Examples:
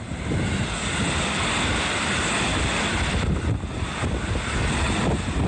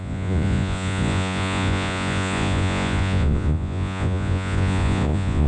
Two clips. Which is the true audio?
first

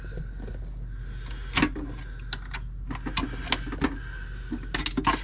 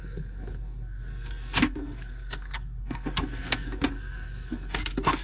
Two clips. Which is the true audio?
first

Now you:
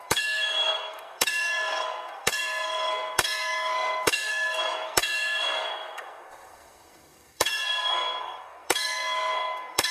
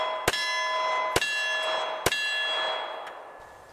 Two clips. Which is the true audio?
second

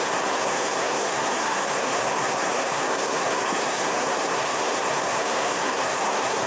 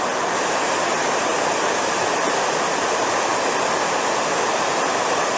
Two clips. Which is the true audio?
second